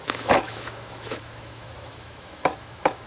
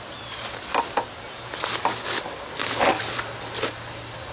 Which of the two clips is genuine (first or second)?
second